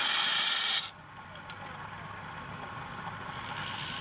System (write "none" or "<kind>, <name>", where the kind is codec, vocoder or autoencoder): none